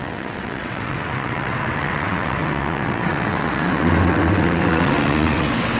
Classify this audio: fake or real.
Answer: fake